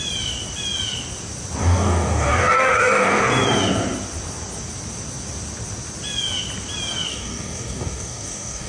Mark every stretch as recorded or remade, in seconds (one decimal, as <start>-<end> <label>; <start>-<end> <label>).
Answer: 0.0-1.6 recorded; 1.6-3.2 remade; 3.2-7.1 recorded; 7.1-8.7 remade